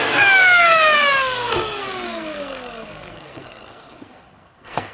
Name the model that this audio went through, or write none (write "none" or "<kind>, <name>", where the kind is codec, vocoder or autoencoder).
codec, SNAC